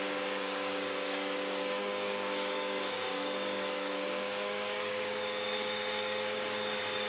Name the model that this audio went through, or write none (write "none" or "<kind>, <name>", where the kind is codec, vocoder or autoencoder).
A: codec, DAC